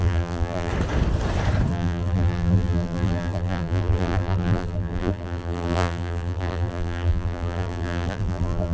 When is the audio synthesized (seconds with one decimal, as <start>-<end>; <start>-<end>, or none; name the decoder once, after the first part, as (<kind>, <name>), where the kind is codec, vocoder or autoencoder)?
0.0-0.7 (vocoder, BigVGAN v2); 1.7-8.7